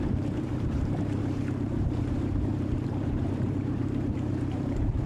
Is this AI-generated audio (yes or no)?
yes